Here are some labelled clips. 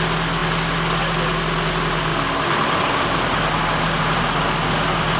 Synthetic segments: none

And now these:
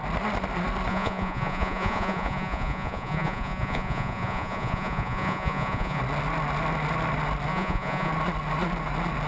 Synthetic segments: 0.9-6.0; 7.5-8.1

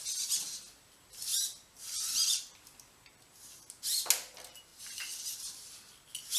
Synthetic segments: 1.3-3.0; 4.7-5.7

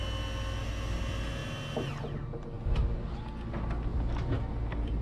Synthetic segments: none

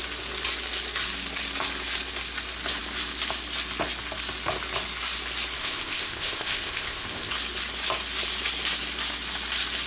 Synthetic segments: 5.6-7.3

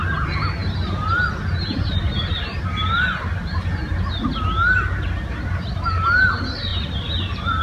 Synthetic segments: none